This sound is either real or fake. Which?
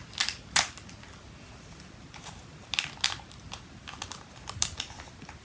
real